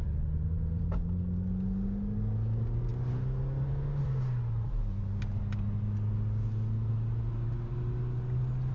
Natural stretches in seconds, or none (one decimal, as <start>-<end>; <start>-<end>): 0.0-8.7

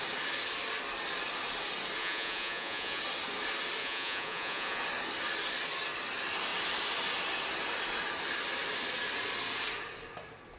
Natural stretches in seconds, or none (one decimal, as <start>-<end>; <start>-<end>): 0.0-2.0; 3.0-3.8; 4.8-10.6

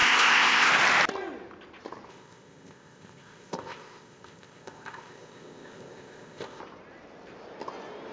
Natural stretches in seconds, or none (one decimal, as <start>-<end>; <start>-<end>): 0.7-2.1; 6.6-8.1

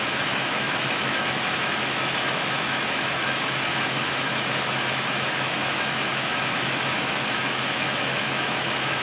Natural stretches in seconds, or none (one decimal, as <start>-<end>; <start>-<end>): none